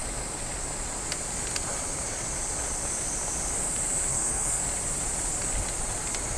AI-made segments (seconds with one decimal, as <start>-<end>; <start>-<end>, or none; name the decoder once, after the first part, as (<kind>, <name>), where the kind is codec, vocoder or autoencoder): 4.1-4.6 (codec, SNAC)